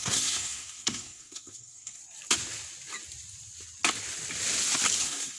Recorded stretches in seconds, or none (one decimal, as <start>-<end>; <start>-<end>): 2.0-5.0